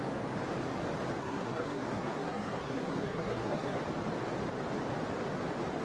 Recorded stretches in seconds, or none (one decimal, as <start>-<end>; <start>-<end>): 0.0-1.2; 3.8-5.8